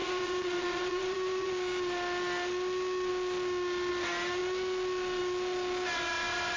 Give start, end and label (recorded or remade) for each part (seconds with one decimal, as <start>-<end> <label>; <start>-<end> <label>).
0.0-1.5 remade; 1.5-6.6 recorded